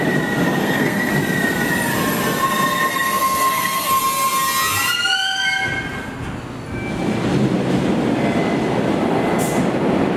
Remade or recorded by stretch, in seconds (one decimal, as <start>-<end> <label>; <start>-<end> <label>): 0.0-0.6 recorded; 0.6-1.1 remade; 1.1-2.9 recorded; 2.9-4.0 remade; 4.0-10.2 recorded